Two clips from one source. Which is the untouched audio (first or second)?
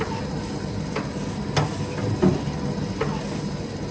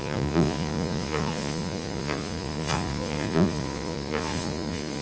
first